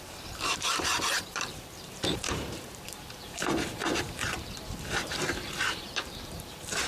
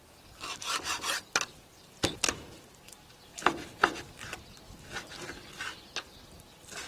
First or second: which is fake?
first